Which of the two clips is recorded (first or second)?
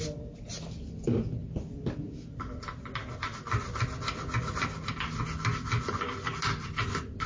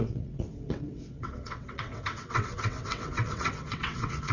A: first